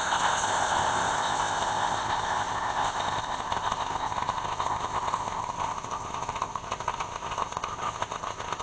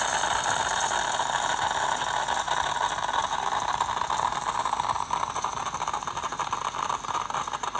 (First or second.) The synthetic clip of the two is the first